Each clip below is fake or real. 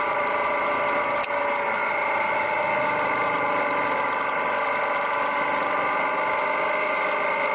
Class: real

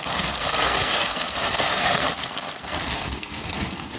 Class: fake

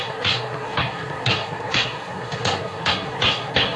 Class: fake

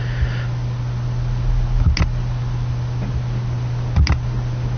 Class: real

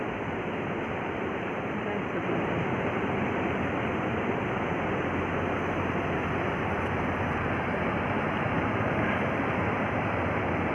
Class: real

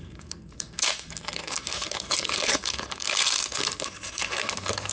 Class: fake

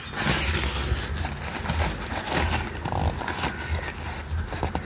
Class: real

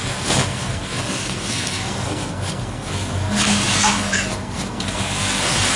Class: fake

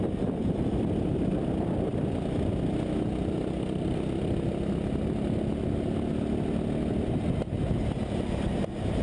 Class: real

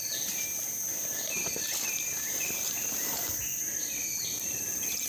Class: real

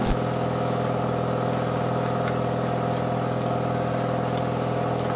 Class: real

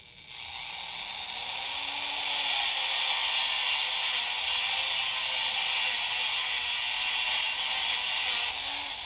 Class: real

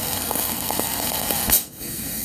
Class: fake